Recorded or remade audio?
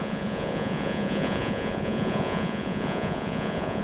remade